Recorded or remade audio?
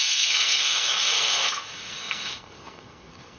remade